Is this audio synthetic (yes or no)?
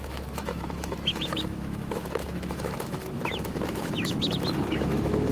yes